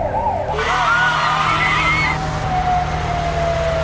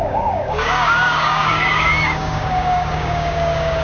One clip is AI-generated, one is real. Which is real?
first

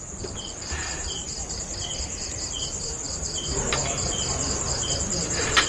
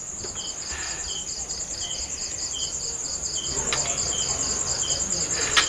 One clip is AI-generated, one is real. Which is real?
second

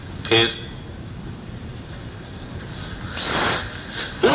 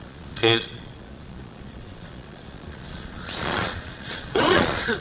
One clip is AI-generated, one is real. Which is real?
first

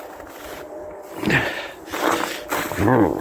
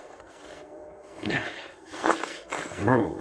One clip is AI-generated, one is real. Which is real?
first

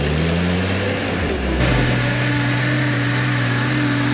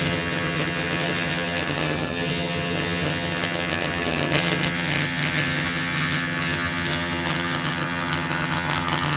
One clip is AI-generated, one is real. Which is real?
first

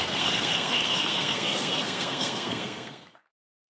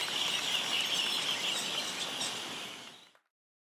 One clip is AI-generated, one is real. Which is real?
second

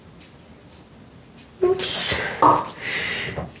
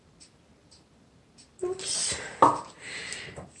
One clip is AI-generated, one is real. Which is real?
first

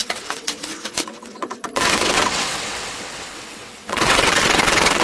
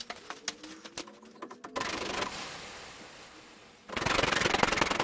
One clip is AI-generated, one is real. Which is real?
second